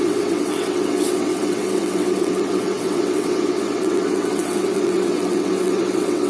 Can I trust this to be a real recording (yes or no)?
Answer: no